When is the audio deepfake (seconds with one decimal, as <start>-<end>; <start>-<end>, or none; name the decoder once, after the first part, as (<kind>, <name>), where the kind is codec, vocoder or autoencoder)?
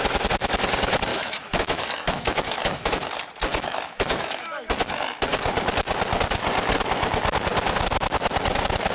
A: 1.1-2.9 (autoencoder, DAC-VAE); 3.5-4.7